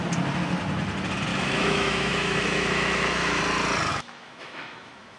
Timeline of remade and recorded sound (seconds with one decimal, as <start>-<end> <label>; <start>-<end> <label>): 0.0-1.3 recorded; 1.3-3.4 remade; 3.4-3.9 recorded; 3.9-5.2 remade